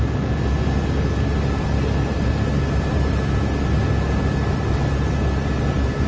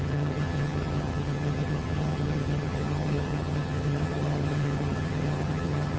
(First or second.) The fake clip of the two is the second